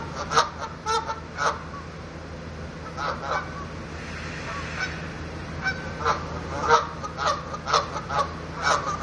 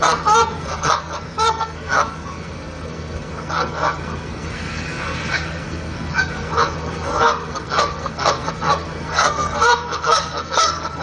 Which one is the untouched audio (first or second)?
first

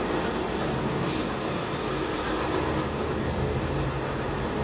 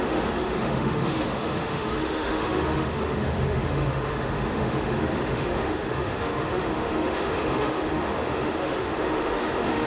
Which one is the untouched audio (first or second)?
first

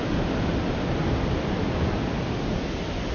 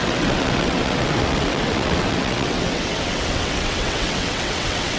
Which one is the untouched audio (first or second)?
first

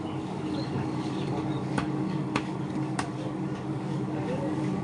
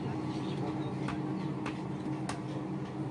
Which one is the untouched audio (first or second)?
second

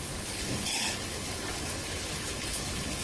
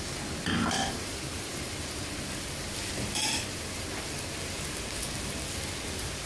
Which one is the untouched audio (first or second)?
second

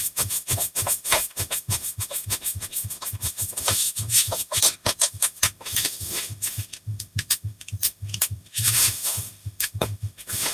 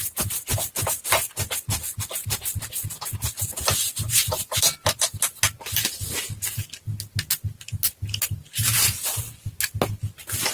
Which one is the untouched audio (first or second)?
second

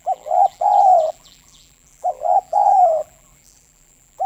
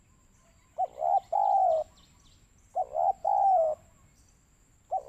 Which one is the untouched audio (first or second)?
second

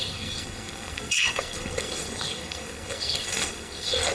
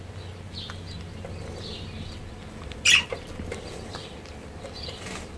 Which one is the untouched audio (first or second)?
second